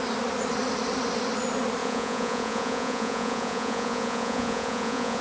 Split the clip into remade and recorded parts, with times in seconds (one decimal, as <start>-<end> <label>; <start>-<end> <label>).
0.0-1.8 recorded; 1.8-5.2 remade